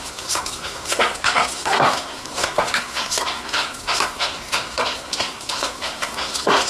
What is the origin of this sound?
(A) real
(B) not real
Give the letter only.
B